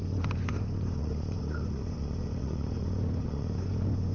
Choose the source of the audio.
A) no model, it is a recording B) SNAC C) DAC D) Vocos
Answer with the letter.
D